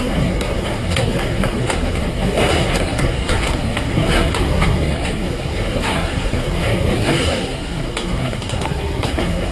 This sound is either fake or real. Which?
fake